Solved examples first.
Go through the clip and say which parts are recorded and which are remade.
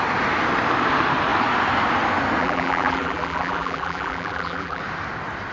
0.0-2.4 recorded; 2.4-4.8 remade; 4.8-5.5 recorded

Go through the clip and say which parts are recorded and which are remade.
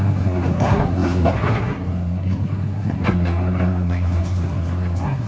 0.0-5.3 remade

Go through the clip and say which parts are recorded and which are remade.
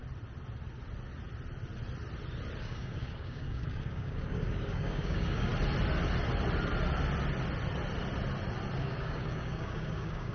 0.0-2.6 recorded; 2.6-5.5 remade; 5.5-8.8 recorded; 8.8-10.3 remade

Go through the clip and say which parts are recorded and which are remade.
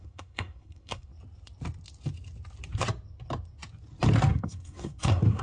0.0-1.1 remade; 1.1-4.3 recorded; 4.3-5.4 remade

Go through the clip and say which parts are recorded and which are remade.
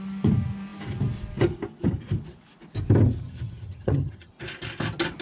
0.0-3.2 recorded; 3.2-4.3 remade; 4.3-5.2 recorded